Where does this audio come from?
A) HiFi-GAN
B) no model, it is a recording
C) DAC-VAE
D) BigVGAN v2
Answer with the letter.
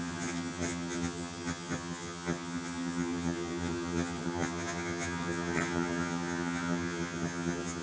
A